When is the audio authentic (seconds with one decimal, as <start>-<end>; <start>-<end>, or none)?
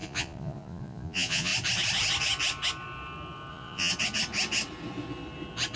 1.5-3.5; 3.9-5.8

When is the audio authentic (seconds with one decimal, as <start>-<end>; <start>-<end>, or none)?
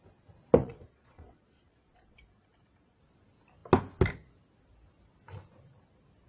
0.0-0.6; 3.0-6.3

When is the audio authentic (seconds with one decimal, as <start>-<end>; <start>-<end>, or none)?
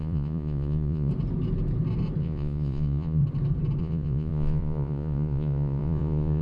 1.1-2.2; 3.2-3.8